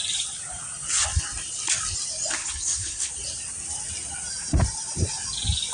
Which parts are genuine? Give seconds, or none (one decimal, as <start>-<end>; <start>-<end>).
0.0-2.4; 3.1-5.7